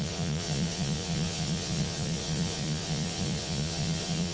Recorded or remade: remade